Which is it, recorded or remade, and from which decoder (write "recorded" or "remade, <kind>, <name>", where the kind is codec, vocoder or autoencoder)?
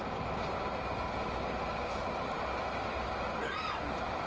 recorded